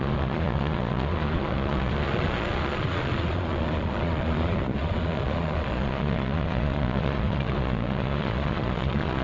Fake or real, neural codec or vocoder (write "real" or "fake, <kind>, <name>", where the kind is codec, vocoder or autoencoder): fake, vocoder, Vocos